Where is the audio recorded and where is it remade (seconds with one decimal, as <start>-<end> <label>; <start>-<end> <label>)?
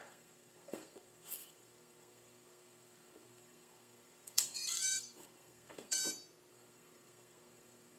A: 0.0-6.0 remade; 6.0-6.5 recorded; 6.5-8.0 remade